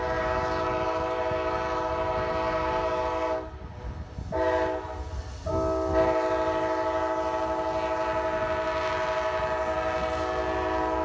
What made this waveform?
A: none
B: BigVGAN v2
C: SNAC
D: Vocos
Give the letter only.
A